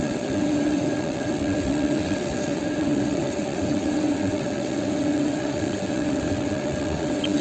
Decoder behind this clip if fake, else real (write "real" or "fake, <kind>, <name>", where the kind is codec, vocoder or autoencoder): fake, vocoder, WaveNeXt